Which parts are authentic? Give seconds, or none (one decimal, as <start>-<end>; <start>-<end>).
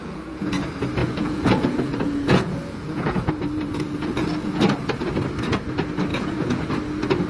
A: 0.5-1.0; 3.3-3.7; 4.6-6.1; 6.7-7.3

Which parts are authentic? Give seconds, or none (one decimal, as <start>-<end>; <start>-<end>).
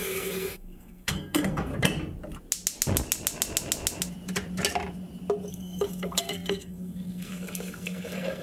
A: 1.7-5.5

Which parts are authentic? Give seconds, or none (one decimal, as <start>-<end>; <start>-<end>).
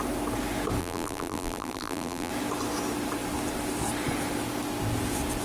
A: 0.0-0.8; 2.3-5.4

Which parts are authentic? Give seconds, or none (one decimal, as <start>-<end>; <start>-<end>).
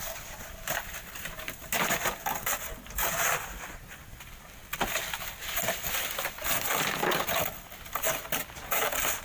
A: 0.0-9.2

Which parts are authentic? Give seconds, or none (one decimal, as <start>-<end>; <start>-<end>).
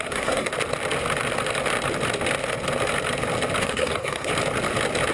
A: 0.5-3.6; 4.3-5.1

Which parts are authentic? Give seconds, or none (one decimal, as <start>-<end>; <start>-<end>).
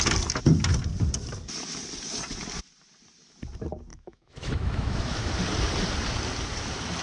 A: 0.0-3.9; 5.3-7.0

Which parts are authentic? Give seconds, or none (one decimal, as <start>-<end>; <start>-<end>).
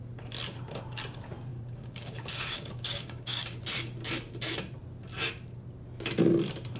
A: 0.0-1.5; 3.6-6.8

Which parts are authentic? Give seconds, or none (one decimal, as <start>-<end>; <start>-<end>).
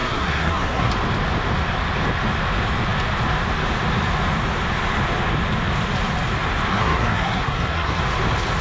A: 0.9-6.7; 8.0-8.6